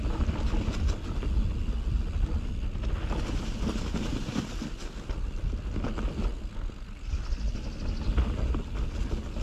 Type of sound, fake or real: real